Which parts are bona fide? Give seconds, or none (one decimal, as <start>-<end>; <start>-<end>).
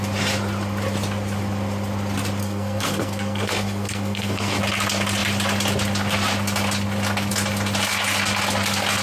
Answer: 0.0-2.4; 4.6-9.0